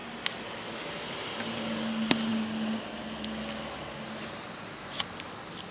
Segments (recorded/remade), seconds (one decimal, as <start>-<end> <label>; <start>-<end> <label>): 0.0-5.7 recorded